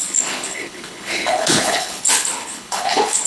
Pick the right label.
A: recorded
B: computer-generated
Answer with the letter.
B